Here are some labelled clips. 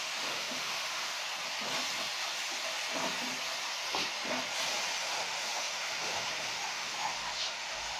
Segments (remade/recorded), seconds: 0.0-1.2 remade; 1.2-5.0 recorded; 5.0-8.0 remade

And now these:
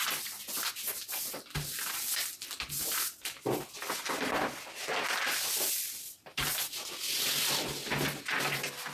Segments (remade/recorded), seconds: 0.0-8.9 recorded

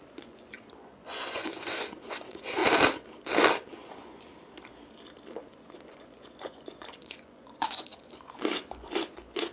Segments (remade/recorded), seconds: 0.0-2.6 remade; 2.6-3.7 recorded; 3.7-4.3 remade; 4.3-5.5 recorded; 5.5-9.5 remade

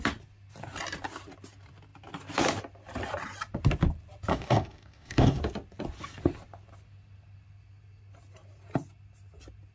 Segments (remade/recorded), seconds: 0.0-4.3 recorded; 4.3-5.4 remade; 5.4-9.7 recorded

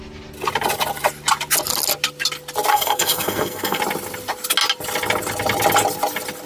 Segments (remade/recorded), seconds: 0.0-2.7 recorded; 2.7-3.8 remade; 3.8-6.5 recorded

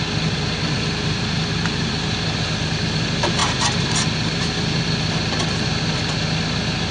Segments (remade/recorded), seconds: 0.0-6.9 recorded